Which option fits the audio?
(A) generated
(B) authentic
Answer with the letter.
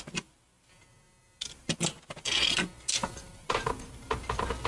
B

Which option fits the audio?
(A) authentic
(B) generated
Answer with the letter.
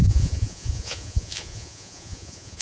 B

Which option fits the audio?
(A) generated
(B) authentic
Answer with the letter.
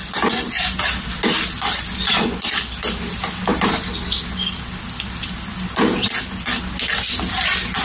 B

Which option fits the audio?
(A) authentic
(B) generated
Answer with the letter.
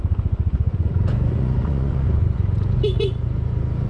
B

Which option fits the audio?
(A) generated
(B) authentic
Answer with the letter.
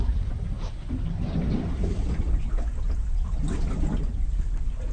B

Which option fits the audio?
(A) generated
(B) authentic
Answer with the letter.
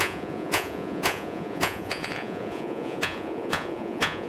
A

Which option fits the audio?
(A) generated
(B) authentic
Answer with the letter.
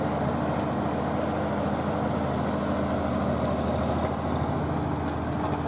B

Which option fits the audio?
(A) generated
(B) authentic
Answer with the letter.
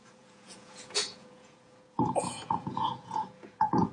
A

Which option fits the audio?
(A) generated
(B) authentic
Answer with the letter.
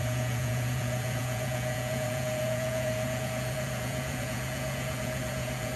A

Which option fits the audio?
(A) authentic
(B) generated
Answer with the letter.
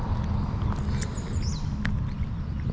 A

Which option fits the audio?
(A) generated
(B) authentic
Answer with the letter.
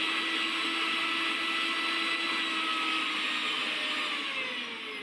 B